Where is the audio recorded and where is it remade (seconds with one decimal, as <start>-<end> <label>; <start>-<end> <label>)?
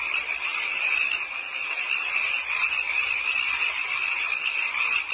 0.0-5.1 recorded